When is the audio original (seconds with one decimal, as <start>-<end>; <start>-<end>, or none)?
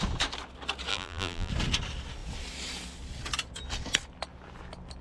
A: 0.0-0.9; 1.5-5.0